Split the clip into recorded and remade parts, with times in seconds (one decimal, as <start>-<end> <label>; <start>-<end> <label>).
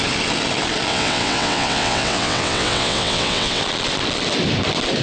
0.0-0.9 recorded; 0.9-3.6 remade; 3.6-5.0 recorded